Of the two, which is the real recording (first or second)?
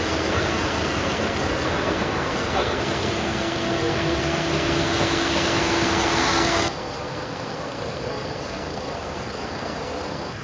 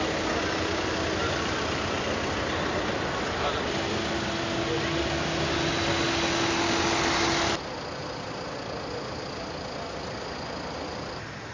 second